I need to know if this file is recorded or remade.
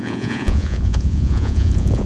remade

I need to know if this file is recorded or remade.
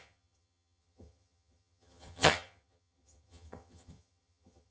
remade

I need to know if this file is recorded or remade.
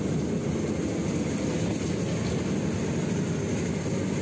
recorded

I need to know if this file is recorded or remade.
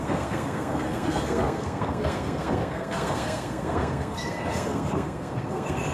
remade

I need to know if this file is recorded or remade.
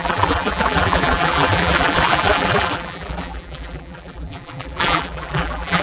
remade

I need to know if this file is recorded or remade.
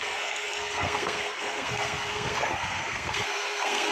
remade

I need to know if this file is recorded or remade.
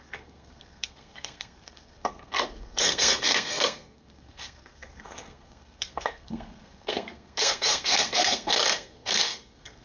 remade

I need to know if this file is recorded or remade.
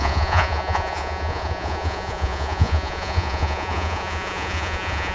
remade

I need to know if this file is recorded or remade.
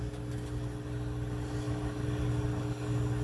recorded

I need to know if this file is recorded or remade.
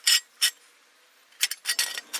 recorded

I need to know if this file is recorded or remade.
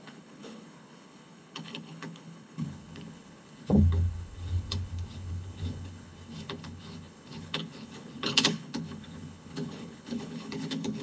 remade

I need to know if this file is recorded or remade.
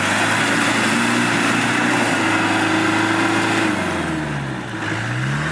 recorded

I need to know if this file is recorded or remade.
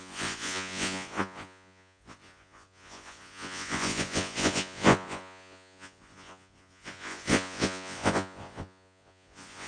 remade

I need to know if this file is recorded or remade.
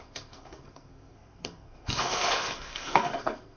remade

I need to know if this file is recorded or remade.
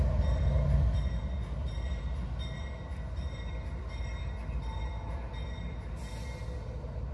recorded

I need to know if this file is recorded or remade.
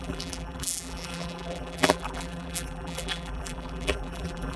remade